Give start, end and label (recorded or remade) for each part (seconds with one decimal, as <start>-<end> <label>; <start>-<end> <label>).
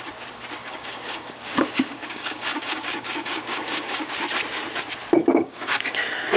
0.0-0.6 recorded; 0.6-4.1 remade; 4.1-5.2 recorded; 5.2-6.0 remade; 6.0-6.4 recorded